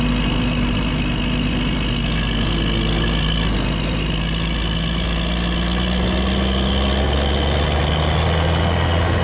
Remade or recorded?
recorded